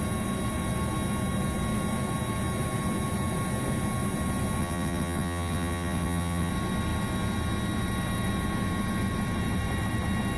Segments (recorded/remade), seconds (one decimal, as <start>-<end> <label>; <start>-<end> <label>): 0.0-4.6 recorded; 4.6-6.5 remade; 6.5-10.4 recorded